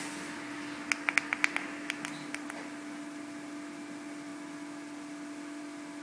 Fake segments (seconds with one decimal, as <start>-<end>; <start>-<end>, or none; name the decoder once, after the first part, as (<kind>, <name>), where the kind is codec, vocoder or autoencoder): none